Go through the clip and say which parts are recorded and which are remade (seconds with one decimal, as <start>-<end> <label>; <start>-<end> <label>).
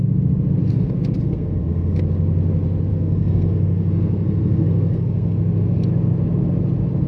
0.0-0.6 recorded; 0.6-2.0 remade; 2.0-2.9 recorded; 2.9-5.9 remade; 5.9-7.1 recorded